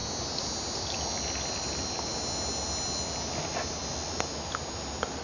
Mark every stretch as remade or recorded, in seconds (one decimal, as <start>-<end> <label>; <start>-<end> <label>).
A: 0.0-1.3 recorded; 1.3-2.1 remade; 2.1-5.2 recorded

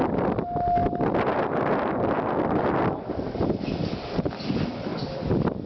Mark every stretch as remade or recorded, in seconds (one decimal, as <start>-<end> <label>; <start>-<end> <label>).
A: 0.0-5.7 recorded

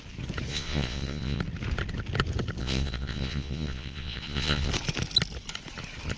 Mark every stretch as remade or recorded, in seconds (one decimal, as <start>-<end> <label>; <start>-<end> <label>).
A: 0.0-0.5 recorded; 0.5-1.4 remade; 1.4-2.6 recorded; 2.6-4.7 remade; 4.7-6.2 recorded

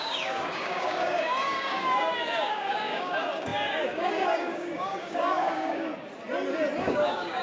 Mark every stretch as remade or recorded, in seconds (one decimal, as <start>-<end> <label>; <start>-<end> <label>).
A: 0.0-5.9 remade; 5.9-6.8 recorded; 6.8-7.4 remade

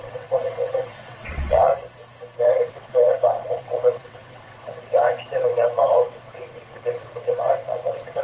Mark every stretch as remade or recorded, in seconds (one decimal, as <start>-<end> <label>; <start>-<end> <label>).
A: 0.0-1.7 remade; 1.7-2.4 recorded; 2.4-8.2 remade

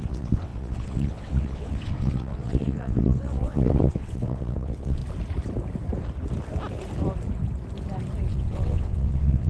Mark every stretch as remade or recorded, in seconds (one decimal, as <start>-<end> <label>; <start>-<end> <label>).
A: 0.0-5.0 remade; 5.0-8.3 recorded; 8.3-9.5 remade

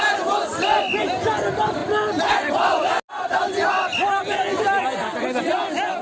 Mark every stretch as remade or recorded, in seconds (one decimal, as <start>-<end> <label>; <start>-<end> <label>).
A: 0.0-6.0 recorded